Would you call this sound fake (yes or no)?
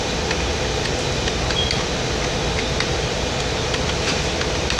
no